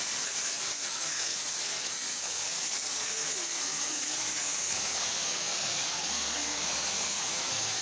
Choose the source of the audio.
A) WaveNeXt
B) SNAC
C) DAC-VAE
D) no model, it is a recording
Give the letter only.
B